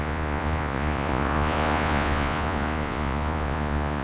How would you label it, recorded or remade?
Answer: remade